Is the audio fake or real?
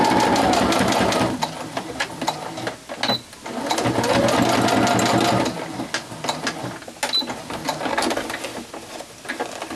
real